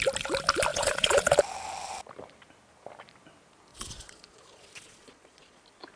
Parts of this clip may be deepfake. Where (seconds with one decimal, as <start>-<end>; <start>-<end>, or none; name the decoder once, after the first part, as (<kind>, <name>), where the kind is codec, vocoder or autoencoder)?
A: 0.7-1.3 (vocoder, Vocos); 3.7-5.6